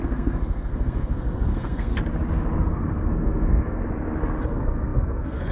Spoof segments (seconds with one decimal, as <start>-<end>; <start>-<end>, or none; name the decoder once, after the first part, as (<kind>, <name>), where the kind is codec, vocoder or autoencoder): 0.0-1.9 (codec, SNAC); 2.6-3.8; 4.4-5.5